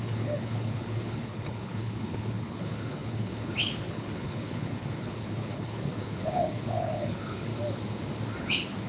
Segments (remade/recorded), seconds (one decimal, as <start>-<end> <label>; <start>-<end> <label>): 0.0-7.5 remade; 7.5-8.4 recorded; 8.4-8.9 remade